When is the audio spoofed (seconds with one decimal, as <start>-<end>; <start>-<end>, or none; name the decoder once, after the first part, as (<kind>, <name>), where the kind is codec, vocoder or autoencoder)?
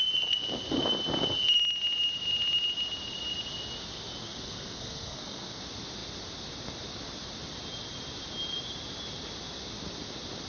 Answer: 4.2-5.6 (codec, SNAC)